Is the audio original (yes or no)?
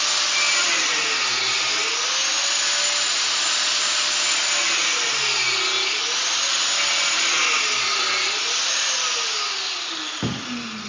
yes